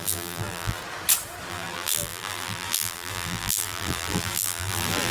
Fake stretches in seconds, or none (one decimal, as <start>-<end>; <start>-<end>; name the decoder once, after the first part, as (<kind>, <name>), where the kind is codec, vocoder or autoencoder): 0.0-0.8 (vocoder, BigVGAN v2); 1.5-5.1